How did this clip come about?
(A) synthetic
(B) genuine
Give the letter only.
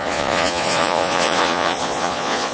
A